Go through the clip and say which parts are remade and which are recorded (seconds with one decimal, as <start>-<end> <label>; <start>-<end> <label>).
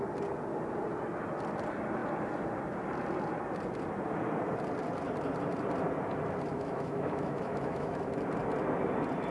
0.0-6.5 recorded; 6.5-8.1 remade; 8.1-9.3 recorded